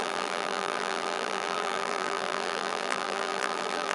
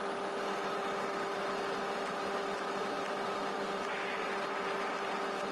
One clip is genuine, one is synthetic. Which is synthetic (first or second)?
first